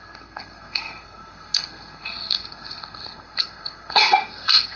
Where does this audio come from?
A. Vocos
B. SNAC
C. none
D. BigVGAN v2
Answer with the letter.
B